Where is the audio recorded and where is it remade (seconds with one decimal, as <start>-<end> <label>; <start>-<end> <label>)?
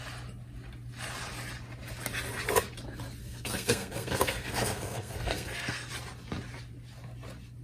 0.0-3.2 recorded; 3.2-5.9 remade; 5.9-7.6 recorded